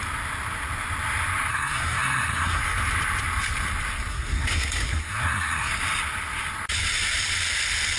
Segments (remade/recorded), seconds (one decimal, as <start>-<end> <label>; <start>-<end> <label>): 0.0-1.5 recorded; 1.5-2.6 remade; 2.6-4.1 recorded; 4.1-5.7 remade; 5.7-8.0 recorded